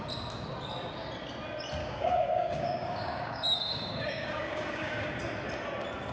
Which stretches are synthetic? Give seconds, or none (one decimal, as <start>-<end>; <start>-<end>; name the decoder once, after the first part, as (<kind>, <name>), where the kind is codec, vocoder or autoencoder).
1.8-5.1 (codec, DAC)